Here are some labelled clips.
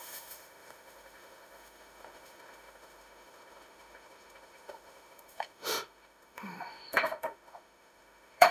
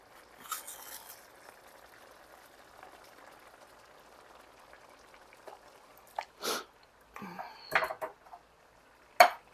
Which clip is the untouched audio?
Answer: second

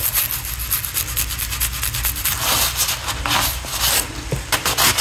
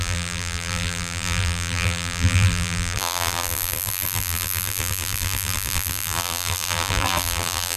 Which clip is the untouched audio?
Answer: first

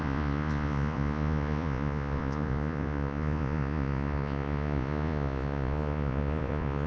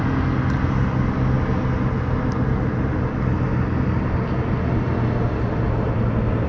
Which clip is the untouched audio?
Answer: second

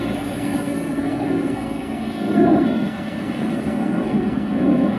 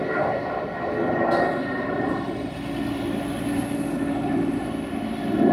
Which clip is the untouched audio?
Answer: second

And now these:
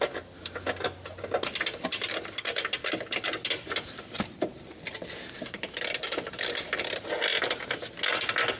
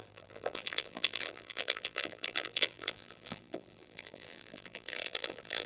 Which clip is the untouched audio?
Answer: first